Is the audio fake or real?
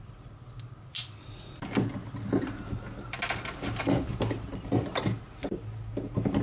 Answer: real